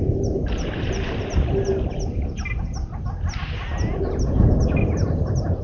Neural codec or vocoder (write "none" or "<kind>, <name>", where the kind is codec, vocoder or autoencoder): none